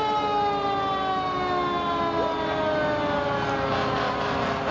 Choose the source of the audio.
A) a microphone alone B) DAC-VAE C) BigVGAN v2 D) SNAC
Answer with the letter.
A